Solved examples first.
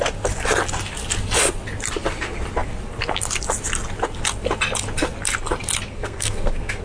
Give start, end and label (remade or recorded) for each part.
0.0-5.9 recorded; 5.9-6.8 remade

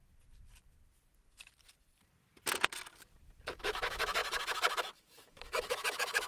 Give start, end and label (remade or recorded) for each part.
0.0-3.6 recorded; 3.6-6.3 remade

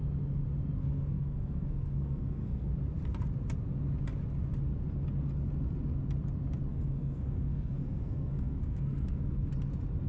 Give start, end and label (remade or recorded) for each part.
0.0-0.8 recorded; 0.8-2.7 remade; 2.7-6.7 recorded; 6.7-9.5 remade; 9.5-10.1 recorded

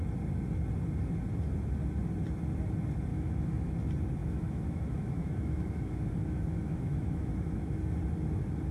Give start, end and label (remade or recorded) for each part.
0.0-3.1 recorded; 3.1-3.7 remade; 3.7-4.2 recorded; 4.2-7.8 remade; 7.8-8.7 recorded

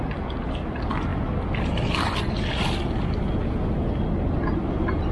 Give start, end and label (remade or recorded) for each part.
0.0-5.1 recorded